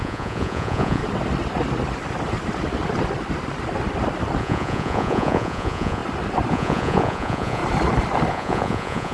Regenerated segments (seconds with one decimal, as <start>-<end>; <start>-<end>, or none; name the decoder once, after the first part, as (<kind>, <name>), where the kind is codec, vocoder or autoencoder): 0.0-1.0 (vocoder, Vocos); 4.4-6.0; 6.5-7.6; 8.3-9.1